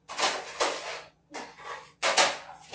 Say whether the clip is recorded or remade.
remade